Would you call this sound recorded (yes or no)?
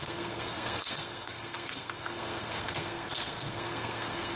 no